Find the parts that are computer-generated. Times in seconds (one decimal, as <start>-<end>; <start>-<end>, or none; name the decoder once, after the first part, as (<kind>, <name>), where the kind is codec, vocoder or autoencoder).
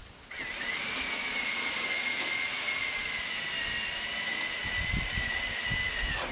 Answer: none